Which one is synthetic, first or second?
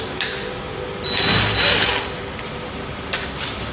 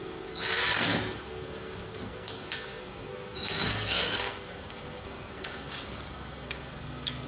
second